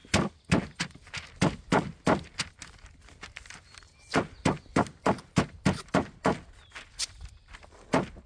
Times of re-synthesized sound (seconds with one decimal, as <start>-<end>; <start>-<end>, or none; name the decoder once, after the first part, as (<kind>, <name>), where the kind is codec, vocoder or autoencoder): none